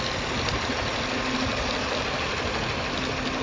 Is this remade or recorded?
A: recorded